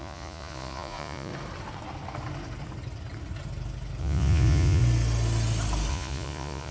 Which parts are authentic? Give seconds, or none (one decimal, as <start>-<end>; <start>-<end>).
1.3-4.0; 4.8-5.9